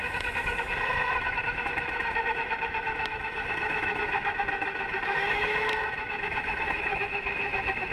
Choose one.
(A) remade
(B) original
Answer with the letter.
A